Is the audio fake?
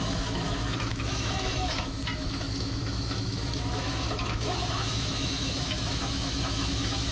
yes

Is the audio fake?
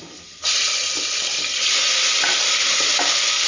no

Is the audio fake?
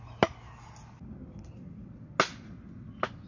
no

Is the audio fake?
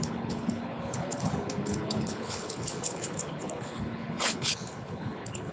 yes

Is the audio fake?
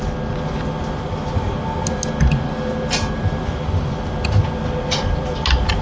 no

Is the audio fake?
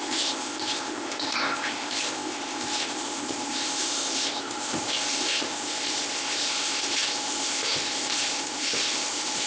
yes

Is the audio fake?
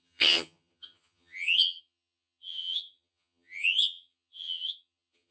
yes